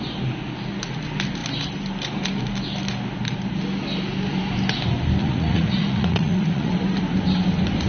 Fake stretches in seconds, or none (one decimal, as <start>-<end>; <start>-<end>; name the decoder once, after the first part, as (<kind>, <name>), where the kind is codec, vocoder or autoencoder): 5.2-6.7 (vocoder, Vocos)